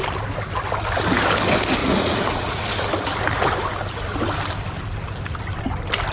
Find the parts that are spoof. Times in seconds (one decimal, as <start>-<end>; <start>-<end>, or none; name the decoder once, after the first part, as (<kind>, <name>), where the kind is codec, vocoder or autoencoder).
1.8-2.6 (vocoder, Vocos)